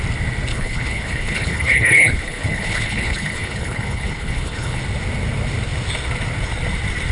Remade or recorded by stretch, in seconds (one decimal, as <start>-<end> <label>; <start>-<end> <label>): 0.0-0.5 recorded; 0.5-4.8 remade; 4.8-7.1 recorded